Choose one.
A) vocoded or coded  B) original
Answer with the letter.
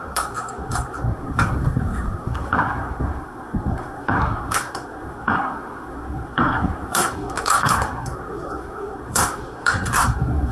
A